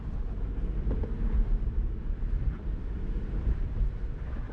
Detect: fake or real fake